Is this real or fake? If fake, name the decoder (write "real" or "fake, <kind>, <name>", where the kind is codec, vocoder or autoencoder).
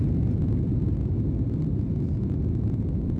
real